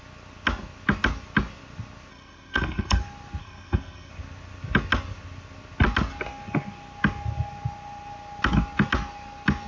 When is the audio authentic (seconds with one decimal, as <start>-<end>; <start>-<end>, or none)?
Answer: 0.0-2.1; 3.0-3.4; 4.1-9.7

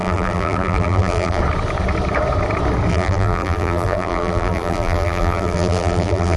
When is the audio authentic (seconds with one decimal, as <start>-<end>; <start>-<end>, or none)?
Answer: 1.4-2.9

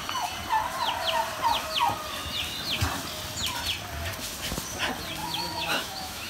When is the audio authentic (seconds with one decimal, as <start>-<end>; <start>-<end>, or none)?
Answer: 0.0-5.2

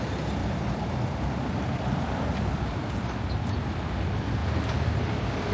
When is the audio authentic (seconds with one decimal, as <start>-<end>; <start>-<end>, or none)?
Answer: 0.0-0.4; 3.7-4.4; 5.0-5.5

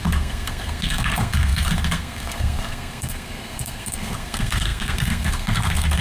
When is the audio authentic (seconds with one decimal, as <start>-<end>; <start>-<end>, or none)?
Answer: none

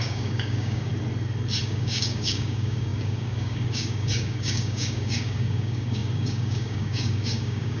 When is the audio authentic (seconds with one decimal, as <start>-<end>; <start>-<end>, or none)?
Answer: 0.9-1.6

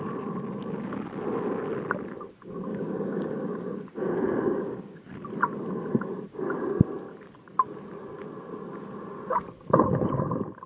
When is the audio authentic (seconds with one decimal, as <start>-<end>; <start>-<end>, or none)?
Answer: 0.0-2.7; 5.1-10.7

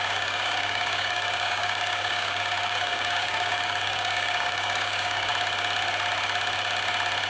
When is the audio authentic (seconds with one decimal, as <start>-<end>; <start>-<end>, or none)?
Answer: 5.3-7.3